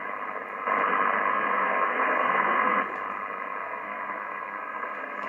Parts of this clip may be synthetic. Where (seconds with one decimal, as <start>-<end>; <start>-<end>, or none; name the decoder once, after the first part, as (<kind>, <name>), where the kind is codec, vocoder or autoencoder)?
1.3-2.8 (codec, SNAC); 3.6-5.3